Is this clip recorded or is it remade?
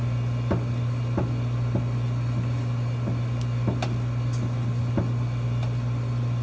recorded